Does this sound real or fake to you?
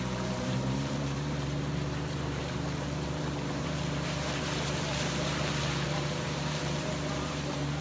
fake